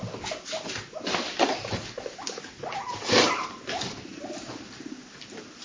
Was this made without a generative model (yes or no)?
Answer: yes